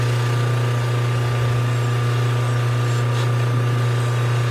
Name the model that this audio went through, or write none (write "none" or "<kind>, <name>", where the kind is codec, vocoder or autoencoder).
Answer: none